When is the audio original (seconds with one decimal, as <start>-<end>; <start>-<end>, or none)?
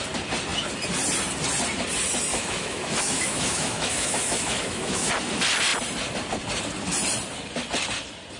0.0-2.3; 5.1-8.4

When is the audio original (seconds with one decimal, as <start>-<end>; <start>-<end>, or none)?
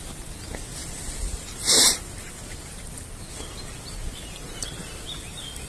0.0-5.7